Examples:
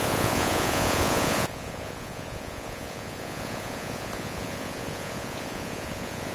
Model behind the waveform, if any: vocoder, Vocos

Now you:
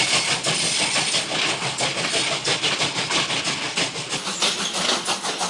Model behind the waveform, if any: none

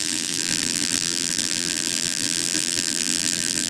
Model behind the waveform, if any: vocoder, BigVGAN v2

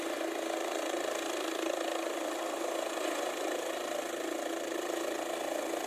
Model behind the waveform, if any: none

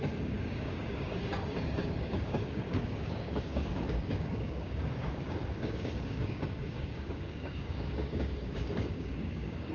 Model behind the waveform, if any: codec, DAC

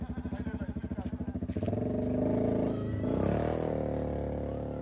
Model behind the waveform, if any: none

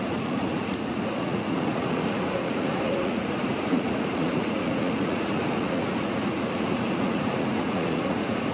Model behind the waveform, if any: vocoder, Vocos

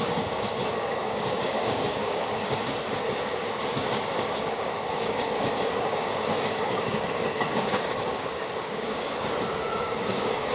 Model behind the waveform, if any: codec, DAC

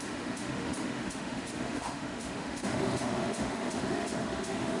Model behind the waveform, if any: autoencoder, DAC-VAE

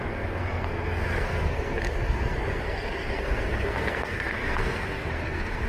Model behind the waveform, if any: codec, SNAC